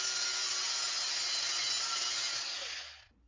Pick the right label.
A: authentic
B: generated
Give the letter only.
A